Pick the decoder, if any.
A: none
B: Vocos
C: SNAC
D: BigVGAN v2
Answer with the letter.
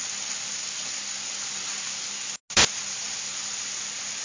A